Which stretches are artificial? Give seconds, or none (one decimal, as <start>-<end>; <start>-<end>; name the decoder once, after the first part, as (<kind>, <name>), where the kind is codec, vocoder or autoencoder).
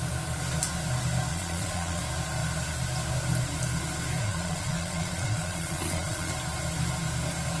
1.3-2.0 (vocoder, Vocos); 4.2-6.3